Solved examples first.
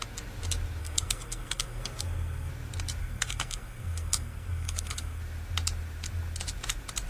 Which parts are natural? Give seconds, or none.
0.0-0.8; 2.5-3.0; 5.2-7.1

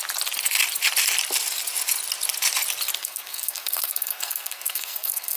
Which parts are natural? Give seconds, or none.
0.0-3.0

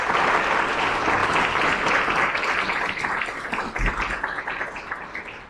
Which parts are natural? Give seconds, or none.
0.0-5.5

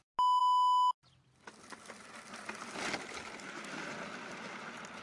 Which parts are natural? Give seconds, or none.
0.0-5.0